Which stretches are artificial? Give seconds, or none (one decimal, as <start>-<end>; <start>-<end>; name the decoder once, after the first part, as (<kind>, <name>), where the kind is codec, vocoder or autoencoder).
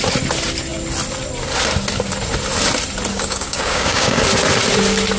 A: 3.1-4.2 (codec, DAC)